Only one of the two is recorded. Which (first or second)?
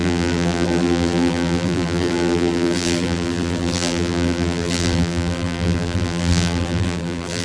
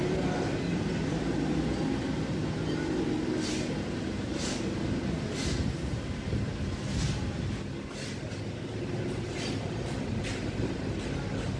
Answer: second